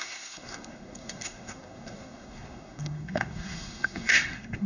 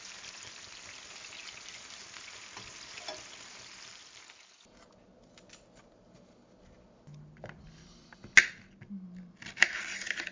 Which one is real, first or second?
second